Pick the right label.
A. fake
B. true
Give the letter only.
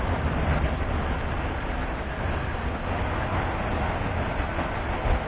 B